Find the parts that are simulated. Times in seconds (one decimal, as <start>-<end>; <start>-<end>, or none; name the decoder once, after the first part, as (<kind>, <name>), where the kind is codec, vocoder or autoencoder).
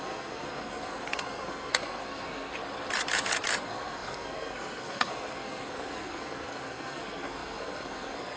0.0-2.5 (codec, SNAC); 3.6-8.4